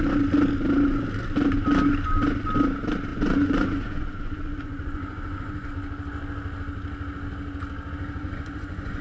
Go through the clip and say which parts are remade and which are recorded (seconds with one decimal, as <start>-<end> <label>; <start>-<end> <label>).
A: 0.0-3.1 recorded; 3.1-5.7 remade; 5.7-8.2 recorded; 8.2-9.0 remade